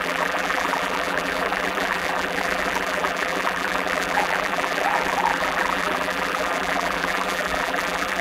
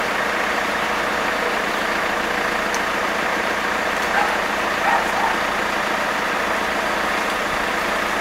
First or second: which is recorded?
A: second